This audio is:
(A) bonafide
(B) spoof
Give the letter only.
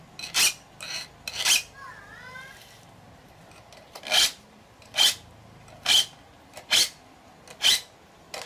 A